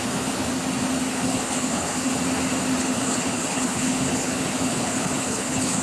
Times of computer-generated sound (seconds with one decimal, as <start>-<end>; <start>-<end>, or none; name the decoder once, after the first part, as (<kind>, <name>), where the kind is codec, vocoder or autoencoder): 0.0-0.5 (codec, HILCodec); 1.1-2.1; 2.8-5.8